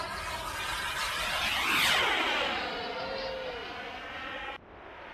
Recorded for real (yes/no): yes